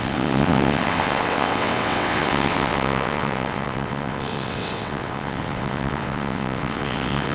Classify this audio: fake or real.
fake